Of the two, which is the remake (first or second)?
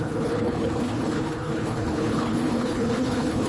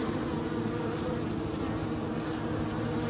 first